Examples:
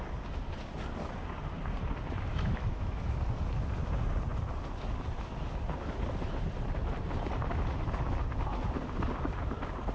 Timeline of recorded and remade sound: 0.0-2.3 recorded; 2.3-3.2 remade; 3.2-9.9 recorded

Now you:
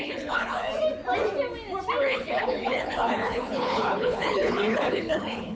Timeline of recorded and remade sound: 0.0-0.7 remade; 0.7-2.0 recorded; 2.0-5.5 remade